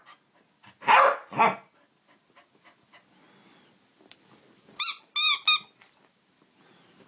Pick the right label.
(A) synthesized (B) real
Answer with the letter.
B